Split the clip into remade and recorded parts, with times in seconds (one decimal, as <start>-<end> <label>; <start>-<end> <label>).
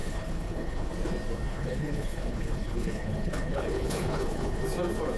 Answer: 0.0-0.9 remade; 0.9-1.5 recorded; 1.5-4.6 remade; 4.6-5.2 recorded